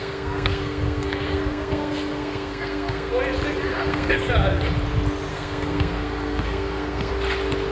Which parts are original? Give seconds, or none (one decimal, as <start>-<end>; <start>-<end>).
3.2-3.7; 4.3-5.3; 7.1-7.7